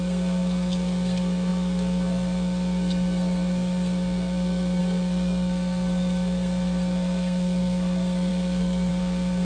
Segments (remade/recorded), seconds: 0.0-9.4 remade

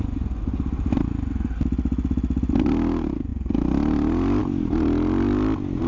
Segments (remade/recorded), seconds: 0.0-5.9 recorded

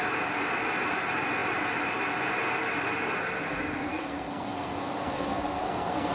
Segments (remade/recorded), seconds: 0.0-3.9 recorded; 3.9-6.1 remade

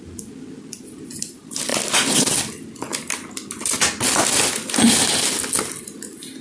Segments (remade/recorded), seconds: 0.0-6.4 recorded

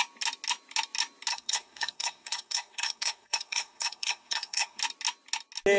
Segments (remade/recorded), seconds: 0.0-1.3 recorded; 1.3-4.8 remade; 4.8-5.8 recorded

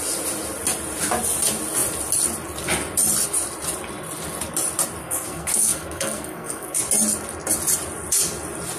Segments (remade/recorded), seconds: 0.0-5.0 recorded; 5.0-6.8 remade; 6.8-8.8 recorded

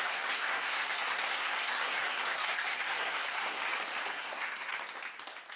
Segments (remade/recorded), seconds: 0.0-3.6 remade; 3.6-4.1 recorded; 4.1-4.7 remade; 4.7-5.6 recorded

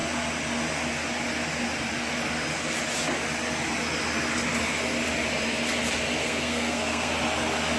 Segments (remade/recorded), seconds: 0.0-6.2 recorded; 6.2-7.1 remade; 7.1-7.8 recorded